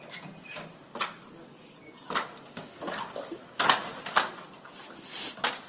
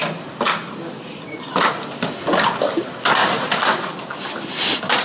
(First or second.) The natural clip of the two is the first